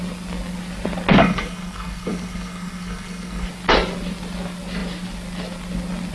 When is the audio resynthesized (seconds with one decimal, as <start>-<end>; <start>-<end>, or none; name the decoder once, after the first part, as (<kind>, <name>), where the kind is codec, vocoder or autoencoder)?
1.2-3.5 (codec, SNAC)